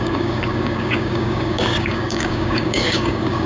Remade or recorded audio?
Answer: remade